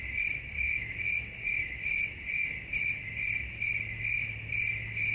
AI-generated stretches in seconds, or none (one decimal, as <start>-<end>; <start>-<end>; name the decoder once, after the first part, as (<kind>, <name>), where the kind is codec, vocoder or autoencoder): none